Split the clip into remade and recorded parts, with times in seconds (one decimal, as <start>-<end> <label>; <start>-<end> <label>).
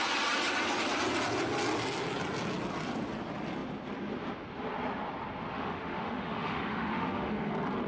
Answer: 0.0-5.5 recorded; 5.5-7.5 remade; 7.5-7.9 recorded